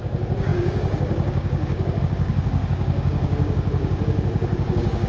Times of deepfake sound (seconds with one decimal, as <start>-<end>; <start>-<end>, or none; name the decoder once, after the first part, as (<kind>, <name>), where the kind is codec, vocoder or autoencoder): 0.0-5.1 (codec, DAC)